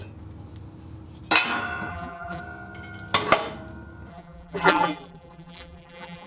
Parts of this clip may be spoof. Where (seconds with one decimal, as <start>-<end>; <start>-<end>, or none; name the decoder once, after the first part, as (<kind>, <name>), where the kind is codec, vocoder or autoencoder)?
1.9-2.4 (vocoder, BigVGAN v2); 4.1-6.3